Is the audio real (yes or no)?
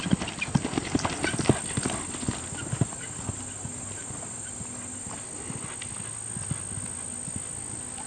yes